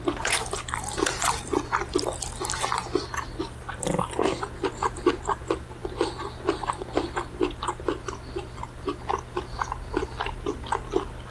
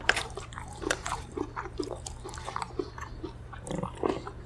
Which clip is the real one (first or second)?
first